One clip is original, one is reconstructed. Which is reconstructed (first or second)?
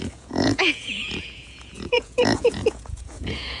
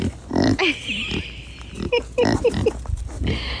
first